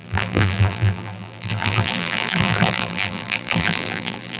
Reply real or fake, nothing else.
fake